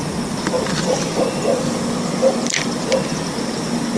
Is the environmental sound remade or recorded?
recorded